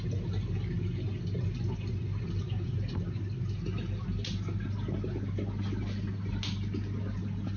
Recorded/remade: recorded